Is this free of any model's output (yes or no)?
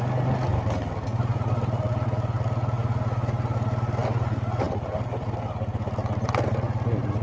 yes